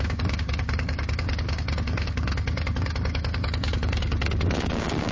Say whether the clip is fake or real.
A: fake